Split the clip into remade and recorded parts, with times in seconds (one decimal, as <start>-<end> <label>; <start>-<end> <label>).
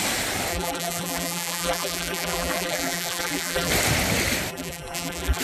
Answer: 0.0-0.5 recorded; 0.5-3.7 remade; 3.7-4.5 recorded; 4.5-5.4 remade